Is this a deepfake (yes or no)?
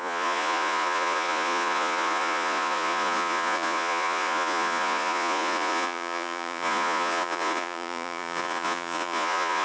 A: yes